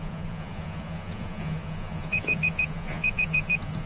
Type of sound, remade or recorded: remade